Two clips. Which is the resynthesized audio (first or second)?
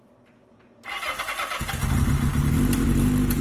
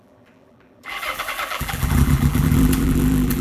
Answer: second